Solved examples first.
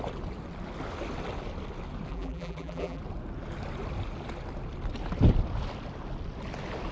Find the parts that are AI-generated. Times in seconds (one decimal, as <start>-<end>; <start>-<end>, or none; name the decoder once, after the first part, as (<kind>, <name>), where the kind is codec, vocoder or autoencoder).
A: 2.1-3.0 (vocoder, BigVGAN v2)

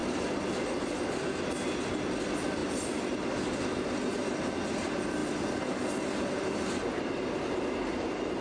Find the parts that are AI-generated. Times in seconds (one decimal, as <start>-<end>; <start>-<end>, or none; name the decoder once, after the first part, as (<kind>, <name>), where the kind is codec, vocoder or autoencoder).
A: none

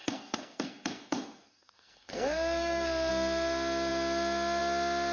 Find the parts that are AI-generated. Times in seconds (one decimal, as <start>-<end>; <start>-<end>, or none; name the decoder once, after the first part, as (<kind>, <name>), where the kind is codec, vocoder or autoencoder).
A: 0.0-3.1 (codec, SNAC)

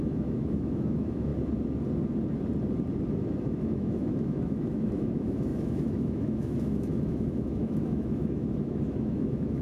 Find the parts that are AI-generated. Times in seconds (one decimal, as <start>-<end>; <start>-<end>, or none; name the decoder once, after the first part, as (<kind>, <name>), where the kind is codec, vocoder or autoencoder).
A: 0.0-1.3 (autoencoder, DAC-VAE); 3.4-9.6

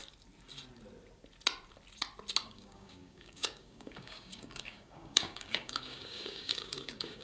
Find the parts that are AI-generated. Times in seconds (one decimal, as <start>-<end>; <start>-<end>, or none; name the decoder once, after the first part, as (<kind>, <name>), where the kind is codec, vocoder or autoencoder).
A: 2.4-7.2 (codec, DAC)